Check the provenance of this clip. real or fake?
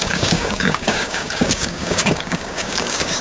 fake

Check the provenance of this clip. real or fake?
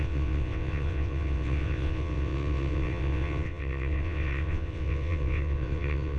fake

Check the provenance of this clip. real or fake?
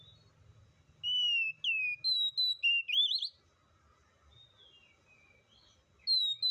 real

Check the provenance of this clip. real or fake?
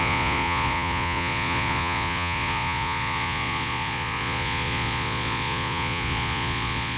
fake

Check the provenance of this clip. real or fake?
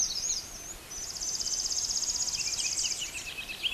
real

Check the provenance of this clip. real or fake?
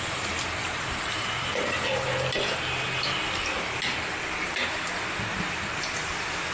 real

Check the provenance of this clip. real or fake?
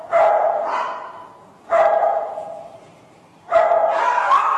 real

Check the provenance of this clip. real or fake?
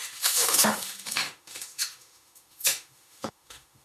fake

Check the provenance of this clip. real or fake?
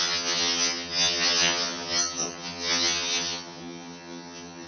fake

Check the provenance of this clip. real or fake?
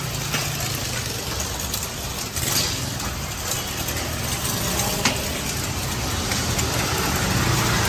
real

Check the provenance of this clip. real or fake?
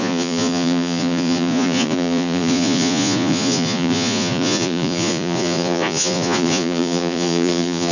fake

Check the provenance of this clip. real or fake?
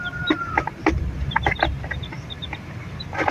fake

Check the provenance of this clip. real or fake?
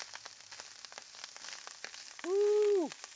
real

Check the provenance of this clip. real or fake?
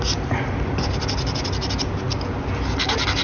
real